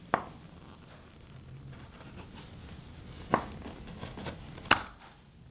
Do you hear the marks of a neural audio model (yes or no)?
no